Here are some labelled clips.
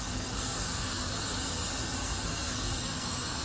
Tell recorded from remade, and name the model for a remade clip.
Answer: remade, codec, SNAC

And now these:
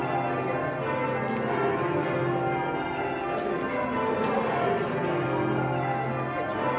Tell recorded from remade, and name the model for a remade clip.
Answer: recorded